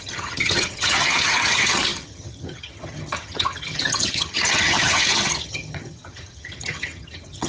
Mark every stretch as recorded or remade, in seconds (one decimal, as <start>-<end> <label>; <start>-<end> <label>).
0.0-7.5 remade